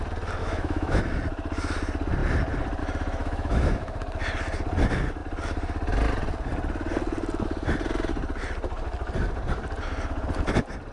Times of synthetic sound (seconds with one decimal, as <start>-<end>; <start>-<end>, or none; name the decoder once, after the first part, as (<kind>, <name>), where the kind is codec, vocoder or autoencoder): 0.4-1.0 (autoencoder, DAC-VAE); 3.2-4.0